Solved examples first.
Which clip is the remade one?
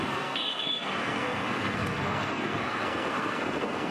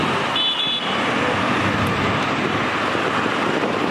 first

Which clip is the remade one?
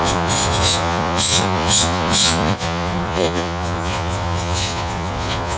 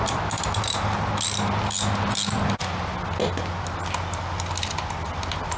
first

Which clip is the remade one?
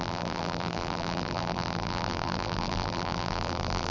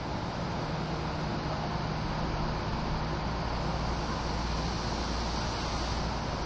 first